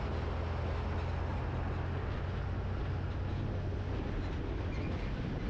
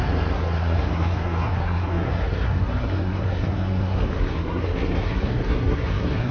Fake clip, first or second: second